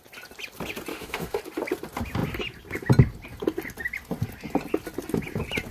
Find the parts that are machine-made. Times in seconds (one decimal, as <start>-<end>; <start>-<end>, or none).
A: 0.9-1.4